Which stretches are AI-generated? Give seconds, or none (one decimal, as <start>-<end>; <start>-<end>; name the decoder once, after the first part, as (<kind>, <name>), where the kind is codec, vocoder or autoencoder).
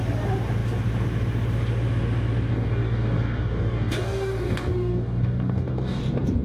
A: 2.5-6.0 (codec, DAC)